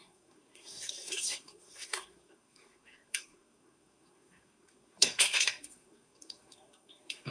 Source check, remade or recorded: remade